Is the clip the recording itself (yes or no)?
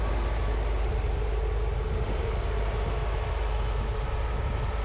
yes